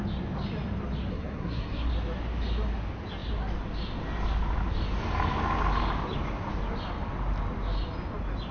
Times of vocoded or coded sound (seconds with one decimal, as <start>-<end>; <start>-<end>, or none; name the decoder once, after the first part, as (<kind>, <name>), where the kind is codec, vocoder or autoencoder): 1.1-1.9 (codec, SNAC)